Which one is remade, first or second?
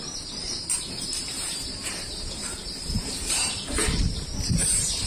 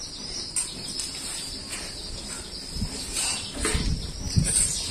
first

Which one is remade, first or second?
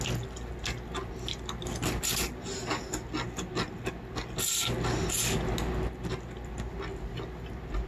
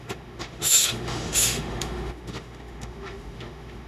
second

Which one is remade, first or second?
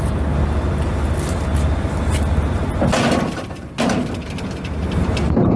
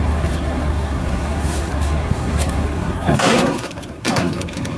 second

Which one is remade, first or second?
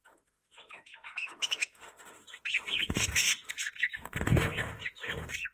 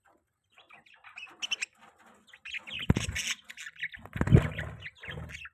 first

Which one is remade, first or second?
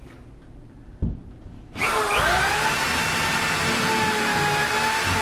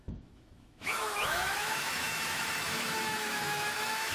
second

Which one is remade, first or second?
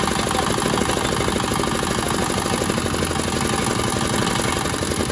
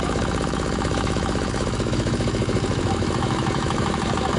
second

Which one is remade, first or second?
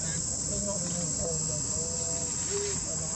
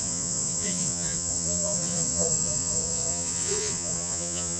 second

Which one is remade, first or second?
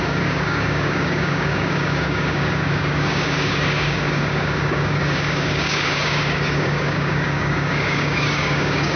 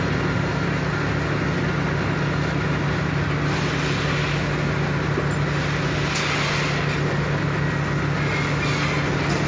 first